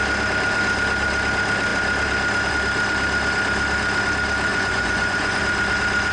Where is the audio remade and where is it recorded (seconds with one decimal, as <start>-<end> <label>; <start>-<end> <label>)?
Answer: 0.0-4.5 recorded; 4.5-5.4 remade; 5.4-6.1 recorded